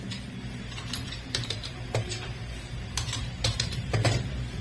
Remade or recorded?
remade